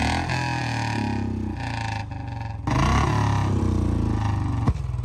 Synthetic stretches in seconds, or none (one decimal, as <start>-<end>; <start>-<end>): none